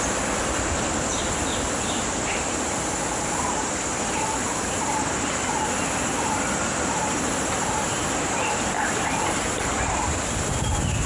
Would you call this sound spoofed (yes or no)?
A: no